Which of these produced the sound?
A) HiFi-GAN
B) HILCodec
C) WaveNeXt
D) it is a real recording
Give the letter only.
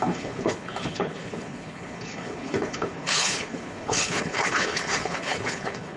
B